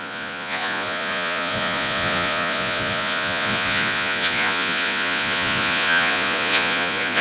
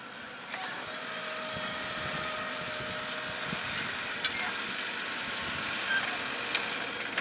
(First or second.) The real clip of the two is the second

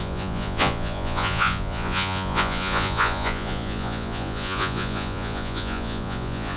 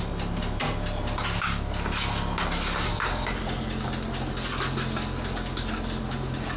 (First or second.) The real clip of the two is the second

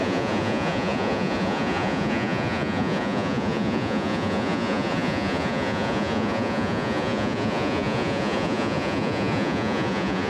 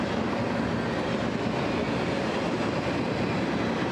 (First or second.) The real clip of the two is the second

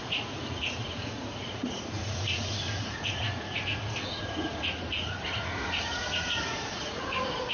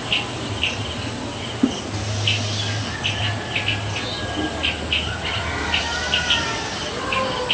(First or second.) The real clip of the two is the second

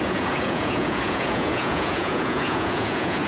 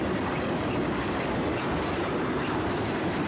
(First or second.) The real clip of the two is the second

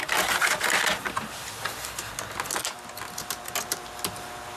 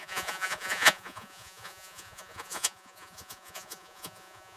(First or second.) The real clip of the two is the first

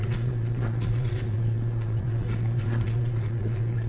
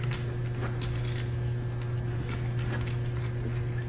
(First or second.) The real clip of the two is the second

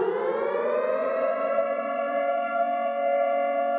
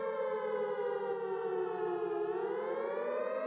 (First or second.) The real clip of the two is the second